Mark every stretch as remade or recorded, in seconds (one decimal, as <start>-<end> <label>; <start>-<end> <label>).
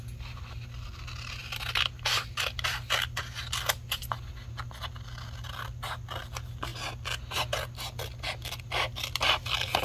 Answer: 0.0-9.8 recorded